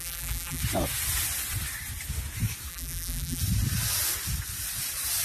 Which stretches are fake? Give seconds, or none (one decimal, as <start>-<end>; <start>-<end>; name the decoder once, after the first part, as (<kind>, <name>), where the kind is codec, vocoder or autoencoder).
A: 0.0-0.6 (vocoder, BigVGAN v2); 2.7-3.4